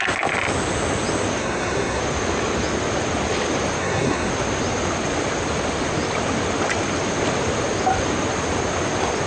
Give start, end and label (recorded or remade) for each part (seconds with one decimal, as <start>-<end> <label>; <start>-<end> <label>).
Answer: 0.0-1.4 recorded; 1.4-2.0 remade; 2.0-3.8 recorded; 3.8-4.3 remade; 4.3-9.3 recorded